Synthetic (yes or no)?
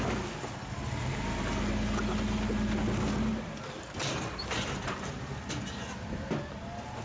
no